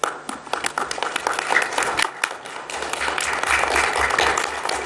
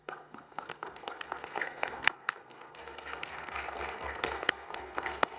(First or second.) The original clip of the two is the first